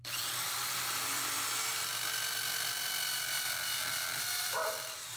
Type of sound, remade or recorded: remade